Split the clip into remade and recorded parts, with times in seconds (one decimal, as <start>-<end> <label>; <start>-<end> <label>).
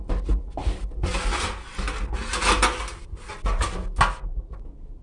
0.0-5.0 recorded